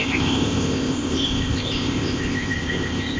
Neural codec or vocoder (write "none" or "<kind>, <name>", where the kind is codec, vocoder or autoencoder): codec, ZipCodec